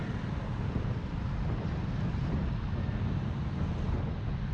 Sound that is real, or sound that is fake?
real